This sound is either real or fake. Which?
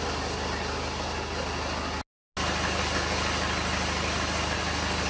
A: real